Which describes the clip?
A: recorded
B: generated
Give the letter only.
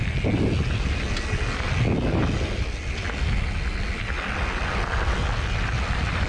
A